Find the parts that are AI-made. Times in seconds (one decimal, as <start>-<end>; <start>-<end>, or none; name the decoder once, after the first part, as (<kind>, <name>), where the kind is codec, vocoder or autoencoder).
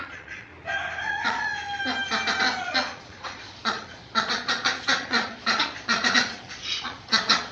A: 0.0-0.5 (vocoder, Vocos); 1.1-1.5; 2.6-7.5